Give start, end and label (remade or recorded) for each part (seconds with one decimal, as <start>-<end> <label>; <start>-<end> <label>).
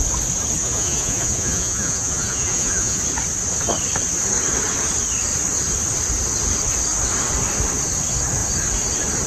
0.0-0.6 recorded; 0.6-3.0 remade; 3.0-9.3 recorded